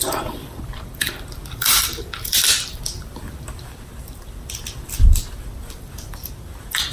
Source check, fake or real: fake